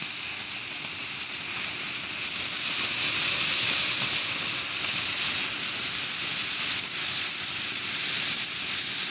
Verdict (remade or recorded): recorded